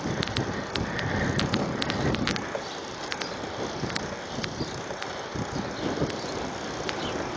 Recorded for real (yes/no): yes